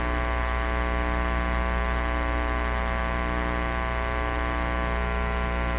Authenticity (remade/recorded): recorded